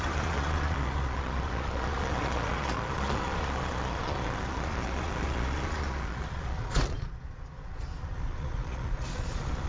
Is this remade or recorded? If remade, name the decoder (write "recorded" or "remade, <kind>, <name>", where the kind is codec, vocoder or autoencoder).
remade, vocoder, Vocos